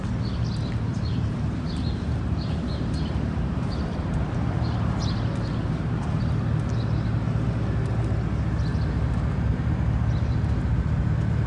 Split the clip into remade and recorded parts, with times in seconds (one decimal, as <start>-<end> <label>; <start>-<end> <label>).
0.0-0.9 recorded; 0.9-4.6 remade; 4.6-11.5 recorded